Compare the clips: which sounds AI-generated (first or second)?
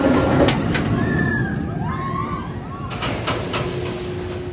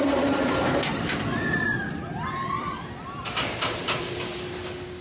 second